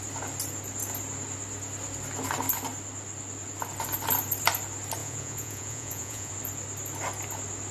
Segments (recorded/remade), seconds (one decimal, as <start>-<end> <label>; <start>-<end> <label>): 0.0-5.0 recorded; 5.0-6.3 remade; 6.3-7.7 recorded